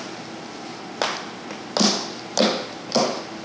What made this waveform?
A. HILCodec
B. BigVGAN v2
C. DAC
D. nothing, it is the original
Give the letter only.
D